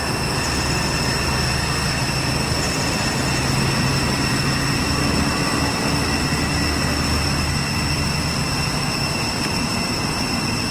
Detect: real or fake real